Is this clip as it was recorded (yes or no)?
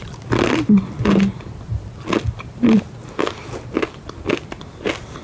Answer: yes